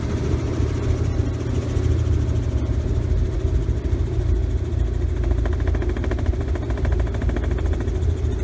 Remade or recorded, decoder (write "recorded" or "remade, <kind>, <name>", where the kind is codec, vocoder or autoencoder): recorded